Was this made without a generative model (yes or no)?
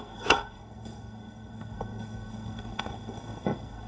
no